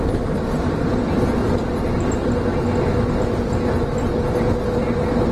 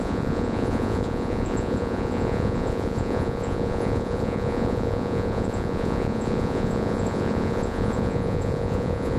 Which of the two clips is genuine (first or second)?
first